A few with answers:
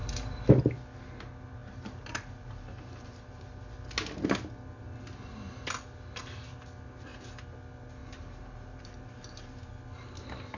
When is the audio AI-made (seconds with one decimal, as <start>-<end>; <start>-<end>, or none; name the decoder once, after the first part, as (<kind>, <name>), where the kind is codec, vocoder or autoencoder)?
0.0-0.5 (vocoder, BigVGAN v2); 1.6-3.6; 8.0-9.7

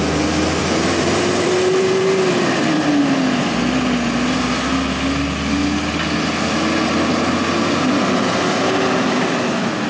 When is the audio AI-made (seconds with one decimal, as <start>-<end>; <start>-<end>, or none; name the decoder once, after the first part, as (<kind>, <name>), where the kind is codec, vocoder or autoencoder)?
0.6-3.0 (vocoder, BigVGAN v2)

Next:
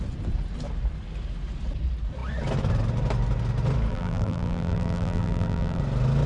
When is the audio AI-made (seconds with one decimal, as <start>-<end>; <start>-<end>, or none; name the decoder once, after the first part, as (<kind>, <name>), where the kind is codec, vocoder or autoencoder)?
3.9-5.8 (vocoder, BigVGAN v2)

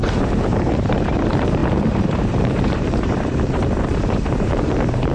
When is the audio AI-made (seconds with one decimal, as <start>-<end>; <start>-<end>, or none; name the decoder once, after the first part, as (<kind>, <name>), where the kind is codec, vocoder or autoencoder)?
0.0-5.1 (vocoder, BigVGAN v2)